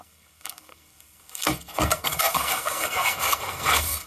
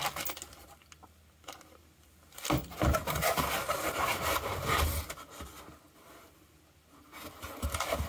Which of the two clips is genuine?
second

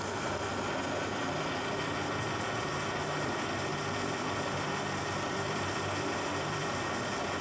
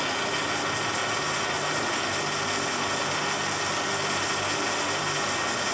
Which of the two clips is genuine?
second